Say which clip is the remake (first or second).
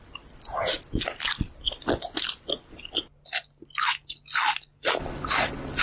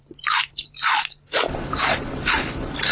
second